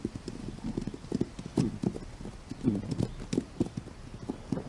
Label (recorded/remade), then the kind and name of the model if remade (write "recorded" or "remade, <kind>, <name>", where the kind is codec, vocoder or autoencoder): recorded